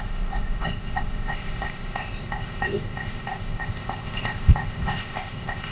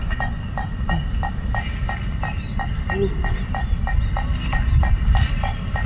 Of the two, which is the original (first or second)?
second